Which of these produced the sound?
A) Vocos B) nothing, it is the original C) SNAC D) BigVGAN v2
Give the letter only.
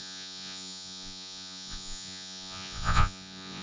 A